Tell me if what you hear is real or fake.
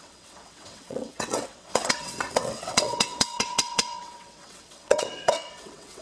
fake